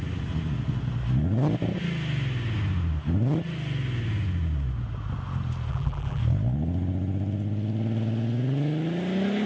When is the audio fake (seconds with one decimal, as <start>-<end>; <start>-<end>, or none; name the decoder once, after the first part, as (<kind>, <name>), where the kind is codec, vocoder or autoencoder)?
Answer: 5.7-6.2 (vocoder, BigVGAN v2)